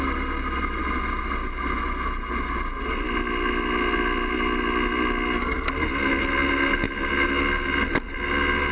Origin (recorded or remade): recorded